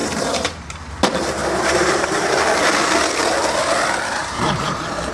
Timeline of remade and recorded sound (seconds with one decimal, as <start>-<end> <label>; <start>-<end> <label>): 0.0-0.9 remade; 0.9-1.4 recorded; 1.4-2.4 remade; 2.4-4.2 recorded; 4.2-5.1 remade